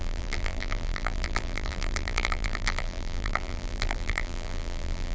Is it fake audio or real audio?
fake